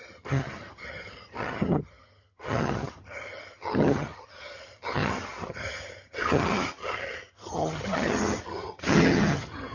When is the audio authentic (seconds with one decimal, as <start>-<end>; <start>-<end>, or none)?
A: none